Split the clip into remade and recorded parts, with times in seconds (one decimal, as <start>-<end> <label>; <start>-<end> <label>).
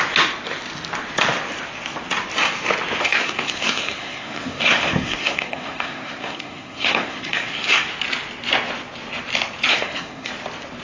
0.0-3.0 recorded; 3.0-7.9 remade; 7.9-9.7 recorded; 9.7-10.3 remade; 10.3-10.8 recorded